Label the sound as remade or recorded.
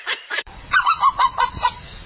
remade